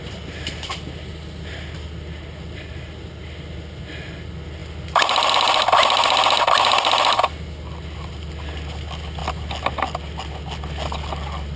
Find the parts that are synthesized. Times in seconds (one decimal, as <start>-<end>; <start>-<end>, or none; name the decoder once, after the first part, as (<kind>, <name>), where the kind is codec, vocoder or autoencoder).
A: none